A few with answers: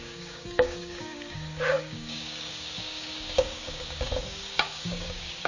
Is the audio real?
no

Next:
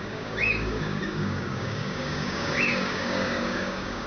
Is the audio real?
no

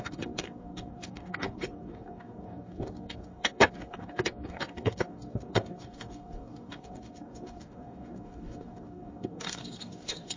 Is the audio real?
no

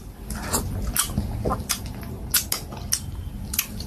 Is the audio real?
yes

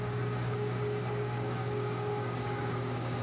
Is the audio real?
no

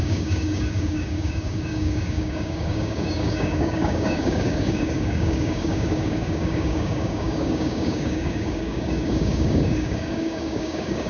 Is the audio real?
no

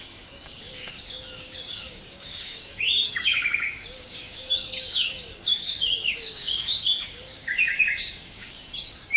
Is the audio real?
no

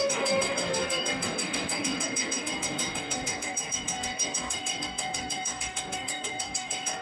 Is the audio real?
no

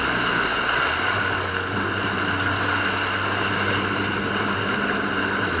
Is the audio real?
yes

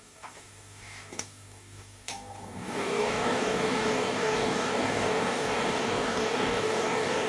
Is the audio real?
no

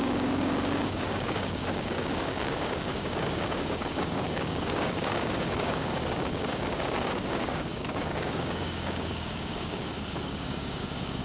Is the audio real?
no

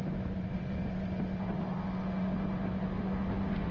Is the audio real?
yes